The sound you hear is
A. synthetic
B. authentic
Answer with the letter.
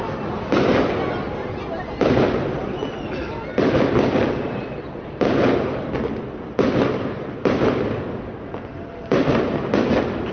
B